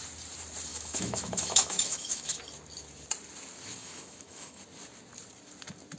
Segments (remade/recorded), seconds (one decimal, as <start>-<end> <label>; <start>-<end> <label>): 0.0-0.7 recorded; 0.7-2.4 remade; 2.4-3.8 recorded; 3.8-4.6 remade; 4.6-6.0 recorded